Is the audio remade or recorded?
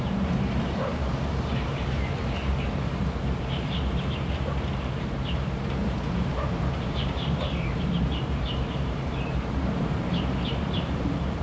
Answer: remade